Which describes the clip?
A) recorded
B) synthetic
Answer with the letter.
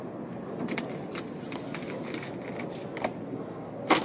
A